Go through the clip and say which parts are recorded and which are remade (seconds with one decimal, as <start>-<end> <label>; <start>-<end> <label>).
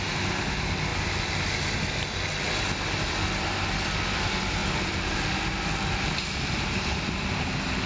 0.0-7.9 recorded